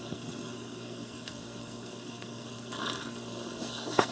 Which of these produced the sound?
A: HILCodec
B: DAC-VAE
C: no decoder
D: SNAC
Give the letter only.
D